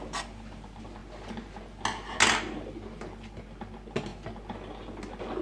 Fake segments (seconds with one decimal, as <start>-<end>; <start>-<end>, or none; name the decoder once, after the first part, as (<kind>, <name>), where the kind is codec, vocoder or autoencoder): none